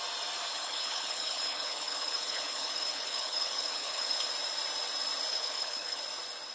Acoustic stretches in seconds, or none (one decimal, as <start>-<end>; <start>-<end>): 0.0-0.5; 4.3-5.3; 6.0-6.5